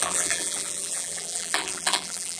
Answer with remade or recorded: remade